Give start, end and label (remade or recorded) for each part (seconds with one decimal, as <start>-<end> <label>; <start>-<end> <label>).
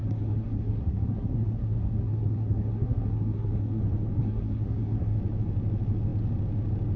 0.0-3.8 remade; 3.8-4.2 recorded; 4.2-5.2 remade; 5.2-7.0 recorded